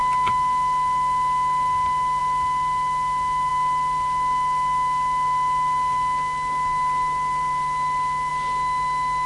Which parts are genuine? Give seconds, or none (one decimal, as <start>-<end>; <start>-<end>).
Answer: 0.0-9.3